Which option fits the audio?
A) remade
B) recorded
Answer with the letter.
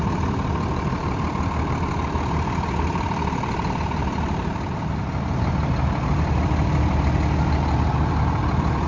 A